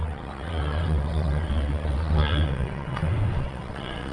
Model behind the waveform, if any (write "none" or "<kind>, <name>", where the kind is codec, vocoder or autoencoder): vocoder, WaveNeXt